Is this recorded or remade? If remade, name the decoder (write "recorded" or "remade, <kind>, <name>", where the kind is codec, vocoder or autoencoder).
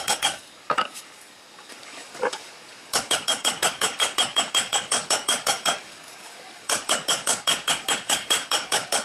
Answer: remade, codec, DAC